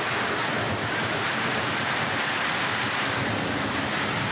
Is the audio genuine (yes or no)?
yes